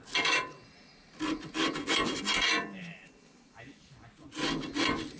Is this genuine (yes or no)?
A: yes